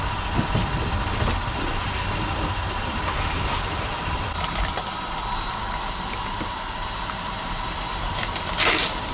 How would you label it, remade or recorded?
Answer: remade